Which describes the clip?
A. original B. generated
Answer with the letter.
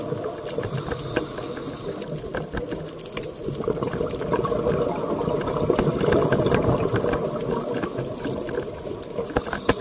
A